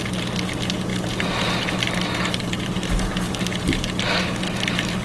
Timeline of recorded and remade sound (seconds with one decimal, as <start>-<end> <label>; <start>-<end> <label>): 0.0-5.0 recorded